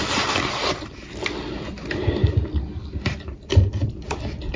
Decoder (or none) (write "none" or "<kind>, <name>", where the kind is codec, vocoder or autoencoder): vocoder, BigVGAN v2